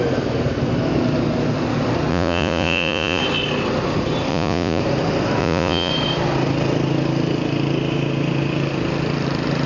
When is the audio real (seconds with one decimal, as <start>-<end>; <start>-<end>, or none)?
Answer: 0.0-2.1; 3.2-4.3; 4.8-5.4; 5.9-9.7